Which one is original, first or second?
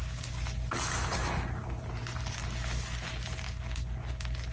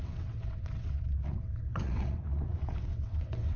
first